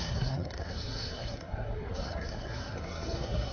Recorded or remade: remade